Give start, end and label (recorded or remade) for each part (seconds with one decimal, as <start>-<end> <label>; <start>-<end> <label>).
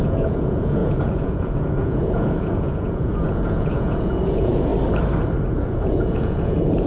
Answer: 0.0-4.7 remade; 4.7-5.5 recorded; 5.5-6.9 remade